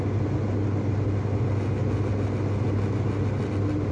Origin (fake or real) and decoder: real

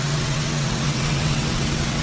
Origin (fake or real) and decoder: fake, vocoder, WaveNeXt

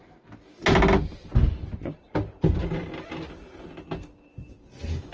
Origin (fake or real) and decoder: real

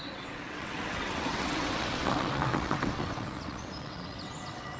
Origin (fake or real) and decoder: fake, vocoder, WaveNeXt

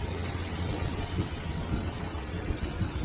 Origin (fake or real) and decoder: fake, vocoder, WaveNeXt